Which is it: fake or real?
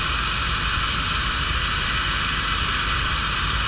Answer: real